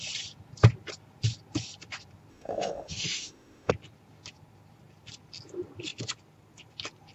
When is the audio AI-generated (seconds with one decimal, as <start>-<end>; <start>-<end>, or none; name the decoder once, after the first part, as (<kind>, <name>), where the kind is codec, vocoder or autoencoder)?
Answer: 2.3-3.7 (autoencoder, DAC-VAE)